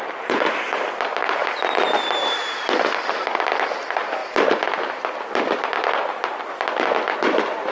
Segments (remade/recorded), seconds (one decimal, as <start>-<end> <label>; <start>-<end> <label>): 0.0-7.7 recorded